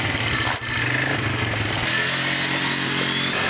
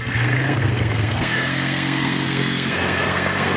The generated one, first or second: second